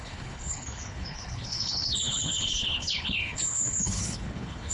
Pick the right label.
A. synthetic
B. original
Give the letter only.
A